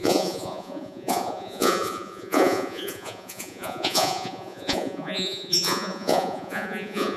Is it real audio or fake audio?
fake